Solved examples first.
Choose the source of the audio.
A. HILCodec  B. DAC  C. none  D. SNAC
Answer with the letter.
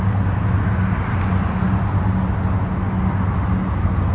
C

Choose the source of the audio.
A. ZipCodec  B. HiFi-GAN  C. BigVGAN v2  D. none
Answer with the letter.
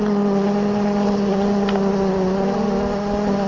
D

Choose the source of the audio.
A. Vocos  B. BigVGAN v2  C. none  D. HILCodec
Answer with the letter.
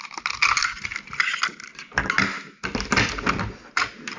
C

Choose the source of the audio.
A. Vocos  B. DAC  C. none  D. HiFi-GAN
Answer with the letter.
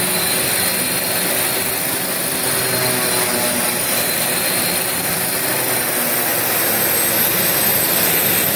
C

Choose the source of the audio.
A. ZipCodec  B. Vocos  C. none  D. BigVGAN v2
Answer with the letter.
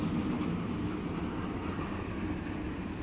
C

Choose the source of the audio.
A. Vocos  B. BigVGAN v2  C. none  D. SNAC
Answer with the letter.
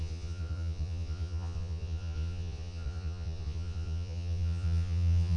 A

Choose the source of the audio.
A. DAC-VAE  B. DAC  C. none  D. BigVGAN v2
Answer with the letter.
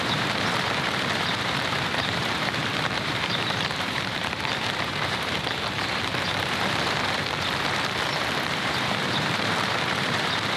D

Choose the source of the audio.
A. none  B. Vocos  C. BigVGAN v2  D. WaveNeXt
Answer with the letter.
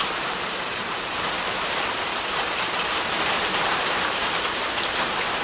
C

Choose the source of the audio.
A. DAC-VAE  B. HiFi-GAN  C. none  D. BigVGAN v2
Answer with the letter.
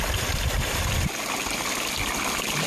C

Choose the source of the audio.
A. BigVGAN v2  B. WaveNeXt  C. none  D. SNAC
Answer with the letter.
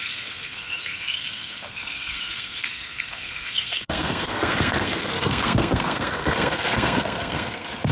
D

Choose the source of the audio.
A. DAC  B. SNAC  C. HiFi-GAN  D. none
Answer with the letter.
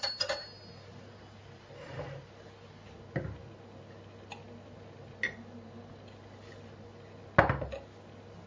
D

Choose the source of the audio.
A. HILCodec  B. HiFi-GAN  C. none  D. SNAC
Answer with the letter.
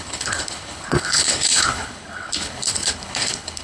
A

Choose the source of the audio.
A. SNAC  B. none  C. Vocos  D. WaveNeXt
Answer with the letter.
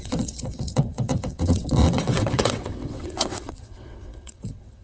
D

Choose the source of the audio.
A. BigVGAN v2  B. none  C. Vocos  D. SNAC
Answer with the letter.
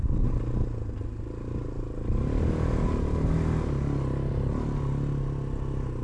B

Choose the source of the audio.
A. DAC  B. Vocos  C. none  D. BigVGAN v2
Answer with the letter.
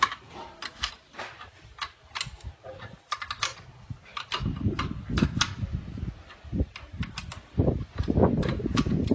C